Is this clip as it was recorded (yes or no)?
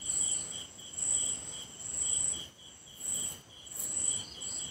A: yes